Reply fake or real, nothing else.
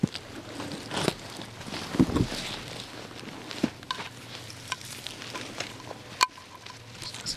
real